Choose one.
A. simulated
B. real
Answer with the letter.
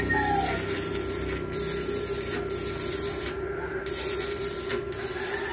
B